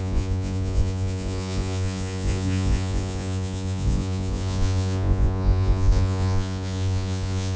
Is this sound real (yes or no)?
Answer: no